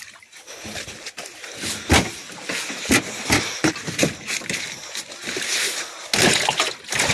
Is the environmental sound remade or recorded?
recorded